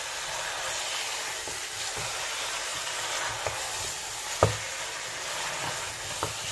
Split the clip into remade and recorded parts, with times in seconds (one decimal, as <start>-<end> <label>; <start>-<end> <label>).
0.0-6.5 recorded